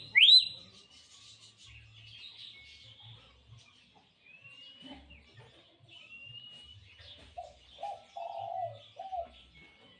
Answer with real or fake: real